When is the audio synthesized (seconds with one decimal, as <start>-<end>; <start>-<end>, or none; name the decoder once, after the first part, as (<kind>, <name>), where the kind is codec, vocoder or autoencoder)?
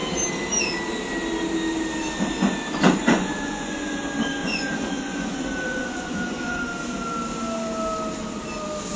3.0-4.0 (vocoder, Vocos); 4.4-6.6